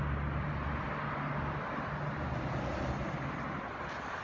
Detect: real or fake real